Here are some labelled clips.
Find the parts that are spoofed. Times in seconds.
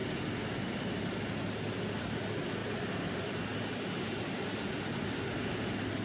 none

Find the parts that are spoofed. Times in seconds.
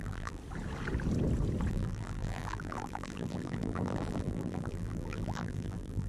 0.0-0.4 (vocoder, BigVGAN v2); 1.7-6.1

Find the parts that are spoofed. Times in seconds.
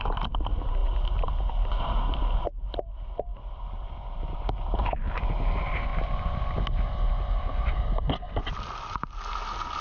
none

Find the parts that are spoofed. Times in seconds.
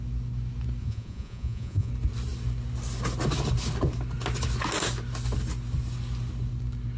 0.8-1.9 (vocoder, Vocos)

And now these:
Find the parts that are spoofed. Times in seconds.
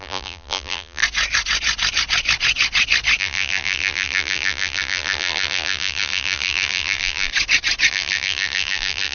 0.0-1.0 (vocoder, BigVGAN v2); 3.2-7.3; 7.9-9.1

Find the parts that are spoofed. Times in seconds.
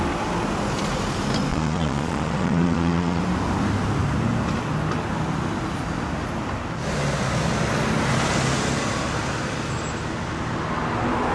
1.5-3.2 (vocoder, Vocos)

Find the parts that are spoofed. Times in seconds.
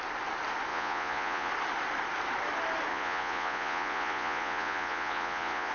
0.7-1.5 (vocoder, Vocos); 2.9-5.7